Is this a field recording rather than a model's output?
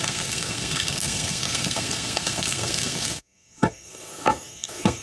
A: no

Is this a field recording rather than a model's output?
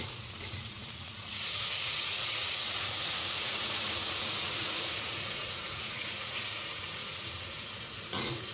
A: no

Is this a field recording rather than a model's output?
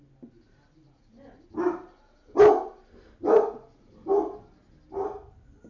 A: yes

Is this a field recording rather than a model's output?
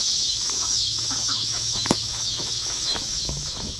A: no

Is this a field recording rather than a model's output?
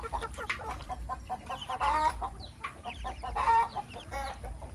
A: no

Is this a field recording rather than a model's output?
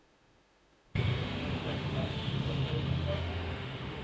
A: no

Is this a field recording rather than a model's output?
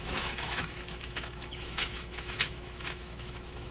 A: no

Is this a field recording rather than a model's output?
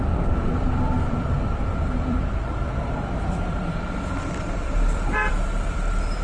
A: no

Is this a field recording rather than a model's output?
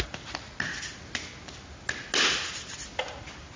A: yes